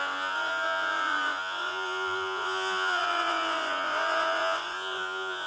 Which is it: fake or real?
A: fake